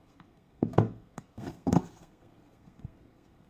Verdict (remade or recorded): remade